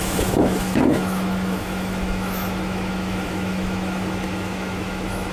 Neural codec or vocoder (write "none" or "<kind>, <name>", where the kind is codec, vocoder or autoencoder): autoencoder, DAC-VAE